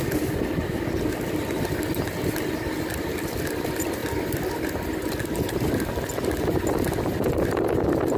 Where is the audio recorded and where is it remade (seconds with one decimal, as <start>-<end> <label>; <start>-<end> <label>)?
0.0-8.2 recorded